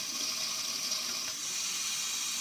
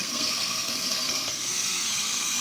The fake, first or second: second